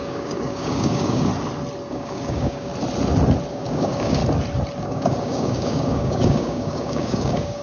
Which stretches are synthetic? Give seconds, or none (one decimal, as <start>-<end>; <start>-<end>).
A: 0.0-1.3; 1.9-2.7; 3.5-4.2; 4.8-7.6